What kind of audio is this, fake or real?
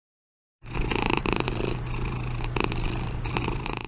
fake